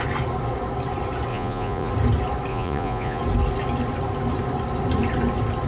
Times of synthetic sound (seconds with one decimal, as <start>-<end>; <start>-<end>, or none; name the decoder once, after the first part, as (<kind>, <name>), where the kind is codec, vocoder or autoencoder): 1.3-1.9 (vocoder, Vocos); 2.5-3.2